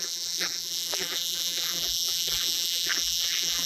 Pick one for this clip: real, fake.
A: fake